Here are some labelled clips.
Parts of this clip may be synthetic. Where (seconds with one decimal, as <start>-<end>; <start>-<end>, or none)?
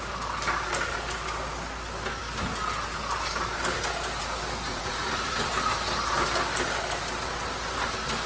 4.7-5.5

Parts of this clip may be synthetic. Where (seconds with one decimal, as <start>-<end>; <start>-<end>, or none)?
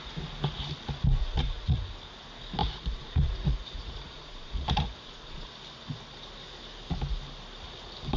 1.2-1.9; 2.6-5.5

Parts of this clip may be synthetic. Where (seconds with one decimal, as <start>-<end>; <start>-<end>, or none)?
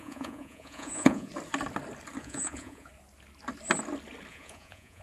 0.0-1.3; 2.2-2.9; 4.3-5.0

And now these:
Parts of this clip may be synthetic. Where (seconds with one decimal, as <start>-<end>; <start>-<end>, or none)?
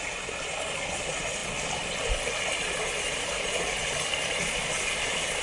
none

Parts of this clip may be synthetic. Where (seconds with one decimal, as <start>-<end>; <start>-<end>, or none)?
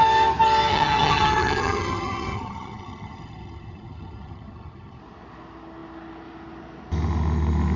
0.7-5.0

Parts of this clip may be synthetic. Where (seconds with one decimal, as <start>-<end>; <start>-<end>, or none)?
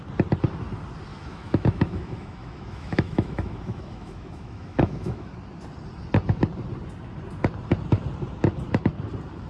1.1-5.3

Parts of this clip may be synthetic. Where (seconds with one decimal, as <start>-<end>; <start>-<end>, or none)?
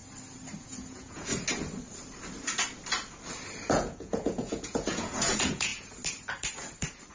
0.6-1.3; 3.7-5.7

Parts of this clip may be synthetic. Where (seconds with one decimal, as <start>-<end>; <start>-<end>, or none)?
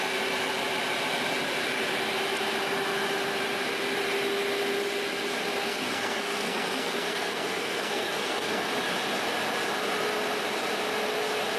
5.6-8.7